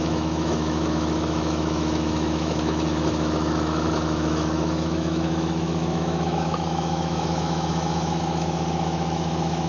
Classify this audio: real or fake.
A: fake